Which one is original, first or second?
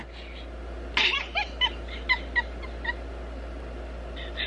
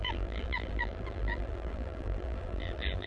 first